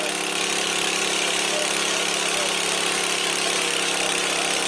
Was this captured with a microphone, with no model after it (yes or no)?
yes